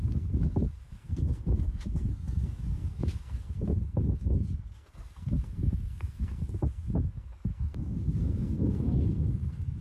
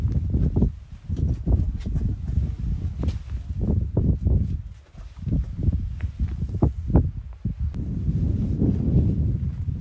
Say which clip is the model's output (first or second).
first